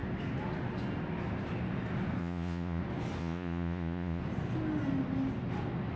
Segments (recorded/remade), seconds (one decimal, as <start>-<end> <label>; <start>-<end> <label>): 0.0-2.2 recorded; 2.2-2.8 remade; 2.8-3.2 recorded; 3.2-4.2 remade; 4.2-6.0 recorded